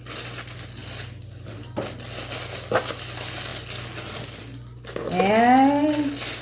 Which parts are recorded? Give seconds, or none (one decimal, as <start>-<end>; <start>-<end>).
0.0-6.4